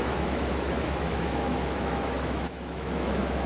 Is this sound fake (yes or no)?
yes